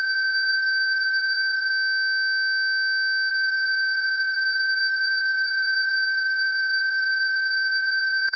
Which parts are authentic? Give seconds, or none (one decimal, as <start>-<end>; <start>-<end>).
1.7-3.3